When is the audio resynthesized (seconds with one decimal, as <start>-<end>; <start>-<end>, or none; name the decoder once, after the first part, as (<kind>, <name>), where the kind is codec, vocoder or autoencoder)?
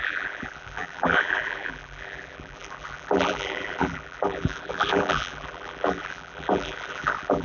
0.0-7.4 (vocoder, BigVGAN v2)